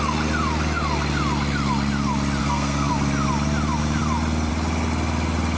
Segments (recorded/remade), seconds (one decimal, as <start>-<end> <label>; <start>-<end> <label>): 0.0-2.4 recorded; 2.4-2.9 remade; 2.9-5.6 recorded